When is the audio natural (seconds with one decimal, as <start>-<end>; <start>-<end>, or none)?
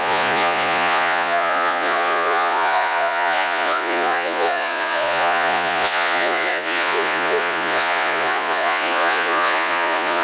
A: none